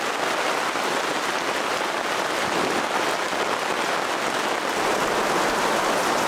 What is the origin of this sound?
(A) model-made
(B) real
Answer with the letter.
B